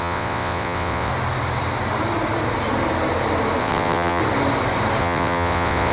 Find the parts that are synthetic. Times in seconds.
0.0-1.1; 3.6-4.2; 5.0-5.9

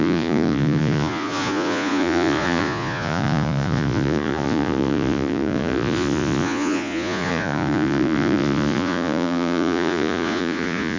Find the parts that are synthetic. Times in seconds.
0.0-11.0

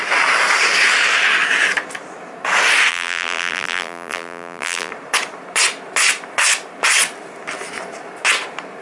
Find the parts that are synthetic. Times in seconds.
2.9-4.9

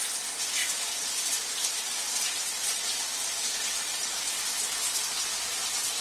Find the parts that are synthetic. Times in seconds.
0.6-4.2

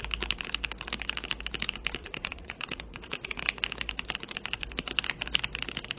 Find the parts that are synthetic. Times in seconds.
2.0-3.4

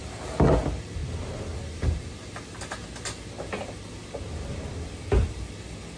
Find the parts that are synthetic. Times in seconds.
none

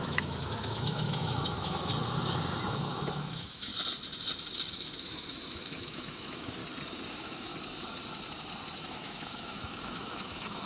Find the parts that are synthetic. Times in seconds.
0.0-1.9; 2.7-3.7; 4.7-6.6; 7.1-7.5; 8.8-10.7